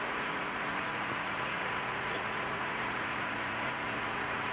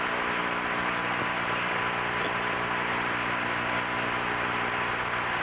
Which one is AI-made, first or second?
first